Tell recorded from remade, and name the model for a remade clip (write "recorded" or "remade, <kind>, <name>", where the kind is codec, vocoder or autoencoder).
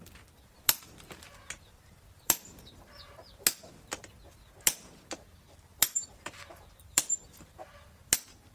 remade, vocoder, BigVGAN v2